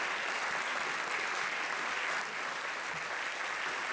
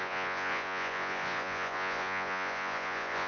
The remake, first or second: second